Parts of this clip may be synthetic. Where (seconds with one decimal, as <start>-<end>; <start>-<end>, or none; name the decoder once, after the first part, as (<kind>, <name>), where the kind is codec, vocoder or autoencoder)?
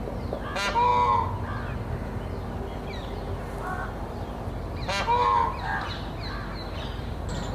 none